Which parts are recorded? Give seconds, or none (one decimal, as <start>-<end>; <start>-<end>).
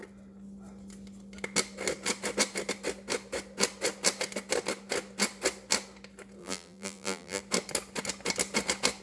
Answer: 0.0-6.4; 7.4-9.0